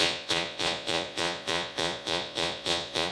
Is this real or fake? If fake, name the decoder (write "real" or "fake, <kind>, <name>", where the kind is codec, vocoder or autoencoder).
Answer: fake, vocoder, Vocos